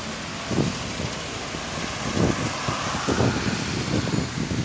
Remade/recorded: recorded